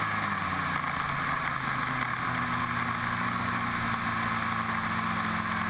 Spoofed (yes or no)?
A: no